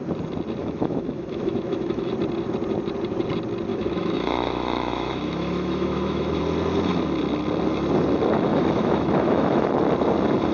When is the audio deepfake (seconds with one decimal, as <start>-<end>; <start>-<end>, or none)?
0.6-2.1; 3.7-6.4; 8.5-9.8